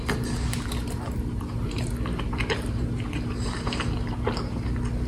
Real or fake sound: real